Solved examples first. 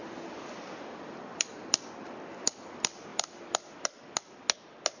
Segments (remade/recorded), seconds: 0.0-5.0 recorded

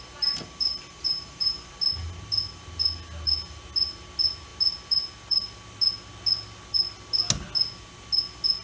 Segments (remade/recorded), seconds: 0.0-0.7 recorded; 0.7-1.7 remade; 1.7-8.6 recorded

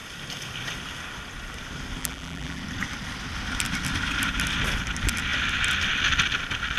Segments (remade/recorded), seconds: 0.0-2.0 recorded; 2.0-2.6 remade; 2.6-6.8 recorded